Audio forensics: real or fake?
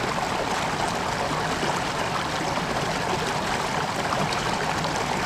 real